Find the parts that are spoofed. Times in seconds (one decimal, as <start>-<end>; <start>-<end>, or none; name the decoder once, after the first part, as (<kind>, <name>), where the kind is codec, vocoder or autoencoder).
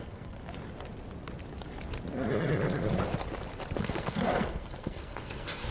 0.0-0.4 (codec, SNAC); 3.8-5.7